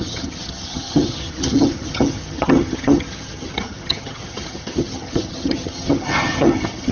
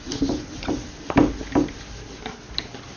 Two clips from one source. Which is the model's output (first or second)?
first